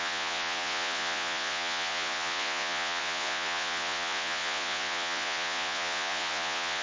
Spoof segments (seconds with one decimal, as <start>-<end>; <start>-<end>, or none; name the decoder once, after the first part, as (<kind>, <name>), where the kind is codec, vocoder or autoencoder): 0.0-6.8 (vocoder, Vocos)